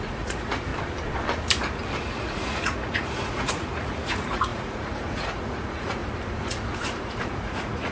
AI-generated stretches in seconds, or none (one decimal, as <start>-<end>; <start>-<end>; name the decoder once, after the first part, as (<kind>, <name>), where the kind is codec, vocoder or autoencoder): 0.0-0.7 (vocoder, Vocos); 2.1-6.0; 6.5-7.9